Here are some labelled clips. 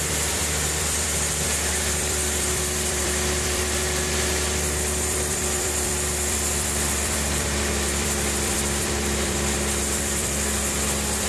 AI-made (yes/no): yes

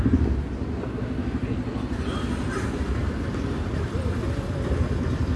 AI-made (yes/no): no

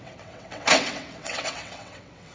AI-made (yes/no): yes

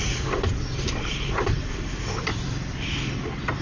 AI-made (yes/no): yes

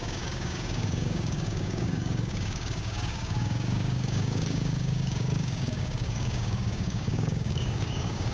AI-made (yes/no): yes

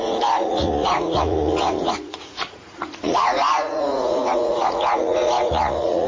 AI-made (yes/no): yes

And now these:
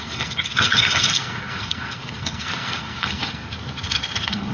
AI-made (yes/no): yes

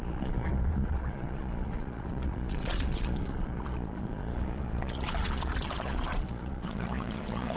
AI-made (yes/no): yes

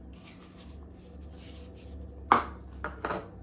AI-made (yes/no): no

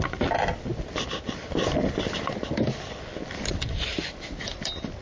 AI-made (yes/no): no